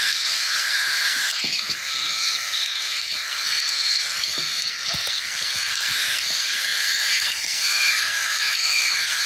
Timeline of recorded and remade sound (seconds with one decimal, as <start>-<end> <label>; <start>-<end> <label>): 0.0-9.3 remade